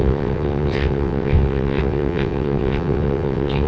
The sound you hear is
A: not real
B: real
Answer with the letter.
A